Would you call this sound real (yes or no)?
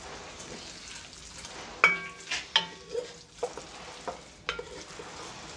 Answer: yes